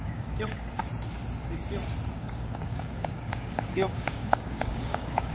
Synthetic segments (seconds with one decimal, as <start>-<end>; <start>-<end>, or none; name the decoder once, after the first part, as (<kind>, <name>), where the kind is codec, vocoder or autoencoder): 0.0-0.8 (codec, DAC); 2.1-5.3